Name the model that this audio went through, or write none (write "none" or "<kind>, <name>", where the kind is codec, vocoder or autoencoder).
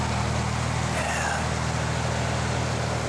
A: none